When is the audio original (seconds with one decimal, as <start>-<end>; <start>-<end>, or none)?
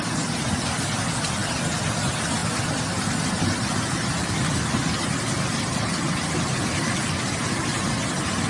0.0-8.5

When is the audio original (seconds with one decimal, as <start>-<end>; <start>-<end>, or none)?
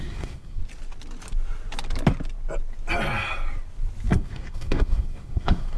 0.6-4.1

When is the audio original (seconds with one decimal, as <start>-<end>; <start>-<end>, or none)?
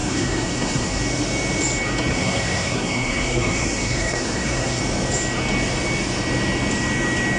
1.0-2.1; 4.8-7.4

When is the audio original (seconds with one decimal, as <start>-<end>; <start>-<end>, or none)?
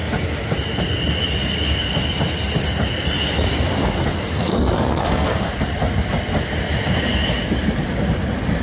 0.0-4.3; 5.5-8.6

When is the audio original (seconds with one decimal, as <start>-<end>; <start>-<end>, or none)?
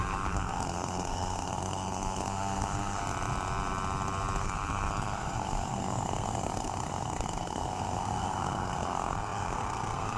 3.0-4.4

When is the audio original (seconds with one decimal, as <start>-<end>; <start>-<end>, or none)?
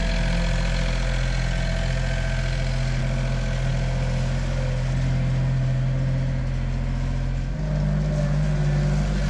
0.0-9.3